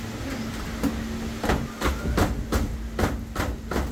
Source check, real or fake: real